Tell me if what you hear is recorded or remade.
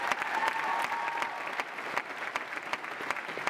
recorded